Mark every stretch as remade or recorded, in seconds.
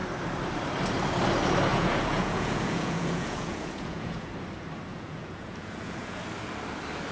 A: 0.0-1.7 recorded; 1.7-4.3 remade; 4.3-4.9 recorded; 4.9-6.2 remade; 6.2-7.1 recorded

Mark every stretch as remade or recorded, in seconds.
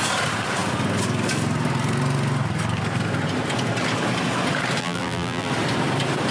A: 0.0-4.8 recorded; 4.8-5.5 remade; 5.5-6.3 recorded